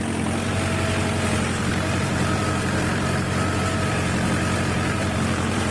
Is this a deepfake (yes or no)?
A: yes